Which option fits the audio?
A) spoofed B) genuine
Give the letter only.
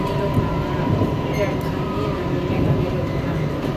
B